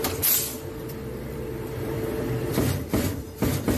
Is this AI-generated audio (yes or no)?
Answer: yes